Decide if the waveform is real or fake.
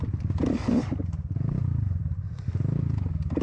real